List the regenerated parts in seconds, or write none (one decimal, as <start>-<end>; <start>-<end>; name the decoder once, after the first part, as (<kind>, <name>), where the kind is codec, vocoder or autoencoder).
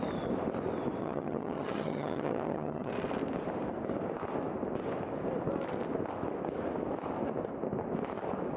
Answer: 1.0-2.9 (vocoder, HiFi-GAN)